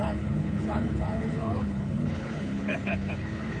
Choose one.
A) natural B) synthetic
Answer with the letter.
B